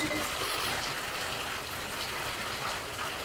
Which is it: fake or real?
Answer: real